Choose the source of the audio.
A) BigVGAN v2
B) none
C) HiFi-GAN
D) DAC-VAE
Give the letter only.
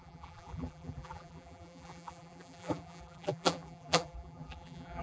A